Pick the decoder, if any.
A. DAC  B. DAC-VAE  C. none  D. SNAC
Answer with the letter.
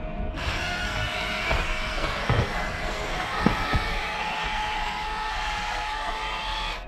D